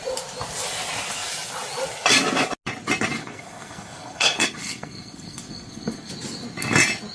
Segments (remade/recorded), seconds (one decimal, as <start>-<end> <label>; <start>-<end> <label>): 0.0-3.2 recorded; 3.2-6.1 remade; 6.1-7.1 recorded